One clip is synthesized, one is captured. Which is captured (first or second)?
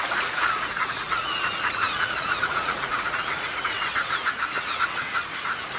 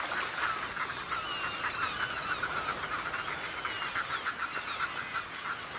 second